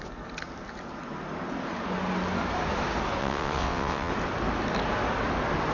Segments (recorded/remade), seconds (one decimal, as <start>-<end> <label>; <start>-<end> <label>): 0.0-3.2 recorded; 3.2-4.1 remade; 4.1-5.7 recorded